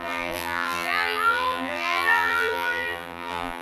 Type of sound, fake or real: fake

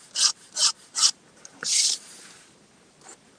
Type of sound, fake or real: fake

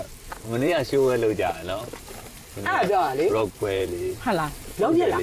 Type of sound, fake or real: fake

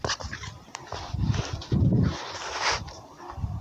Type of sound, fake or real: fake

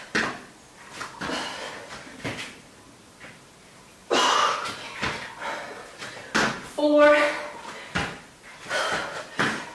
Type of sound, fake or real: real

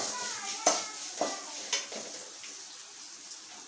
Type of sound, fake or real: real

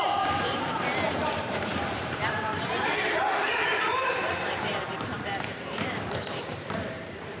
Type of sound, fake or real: fake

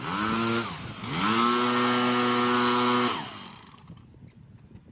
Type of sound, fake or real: real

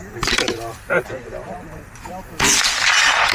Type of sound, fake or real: fake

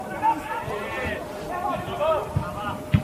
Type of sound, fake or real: fake